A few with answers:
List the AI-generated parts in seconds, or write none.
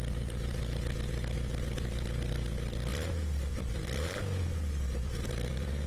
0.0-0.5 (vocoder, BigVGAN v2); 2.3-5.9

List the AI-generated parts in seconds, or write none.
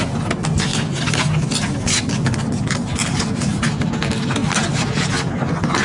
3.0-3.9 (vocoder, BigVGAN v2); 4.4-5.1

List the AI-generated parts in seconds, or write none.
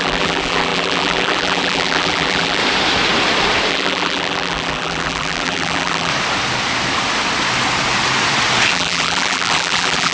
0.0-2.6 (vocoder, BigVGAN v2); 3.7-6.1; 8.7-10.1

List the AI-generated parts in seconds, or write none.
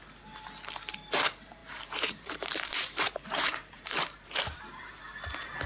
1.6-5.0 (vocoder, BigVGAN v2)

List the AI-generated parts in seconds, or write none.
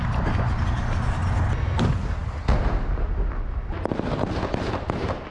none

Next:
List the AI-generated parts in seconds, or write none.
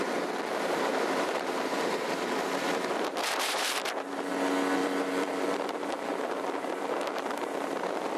0.5-4.3 (vocoder, BigVGAN v2); 4.8-7.7